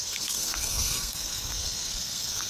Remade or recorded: remade